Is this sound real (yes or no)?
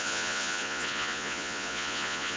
no